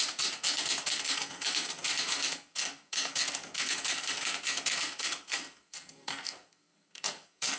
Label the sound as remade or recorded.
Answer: remade